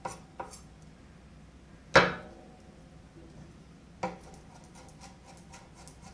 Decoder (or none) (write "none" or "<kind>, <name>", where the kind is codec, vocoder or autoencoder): none